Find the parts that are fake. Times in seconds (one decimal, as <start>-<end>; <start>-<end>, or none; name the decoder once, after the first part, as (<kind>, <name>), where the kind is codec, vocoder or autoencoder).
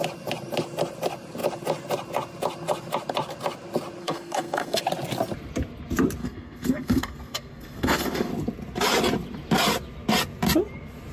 4.0-4.8 (codec, SNAC); 6.2-8.3